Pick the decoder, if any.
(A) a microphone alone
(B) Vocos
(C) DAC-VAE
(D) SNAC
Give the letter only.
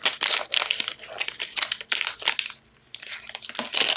A